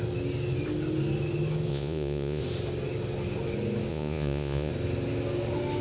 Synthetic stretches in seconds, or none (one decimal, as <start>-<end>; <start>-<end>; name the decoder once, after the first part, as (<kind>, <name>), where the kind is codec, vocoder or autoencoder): 1.7-2.4 (vocoder, Vocos); 3.9-4.7